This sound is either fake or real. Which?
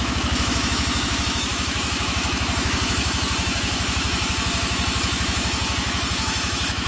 fake